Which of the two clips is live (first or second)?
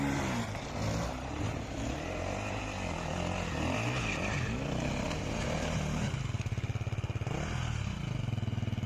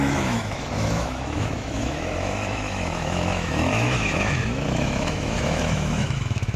first